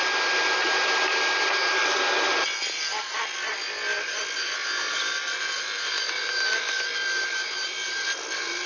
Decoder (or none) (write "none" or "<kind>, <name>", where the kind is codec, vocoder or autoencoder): none